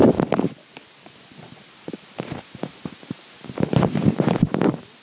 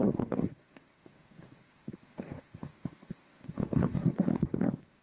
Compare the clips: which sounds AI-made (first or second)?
second